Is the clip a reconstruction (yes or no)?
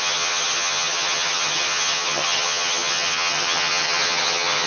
yes